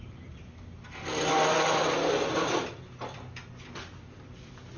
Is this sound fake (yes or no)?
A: yes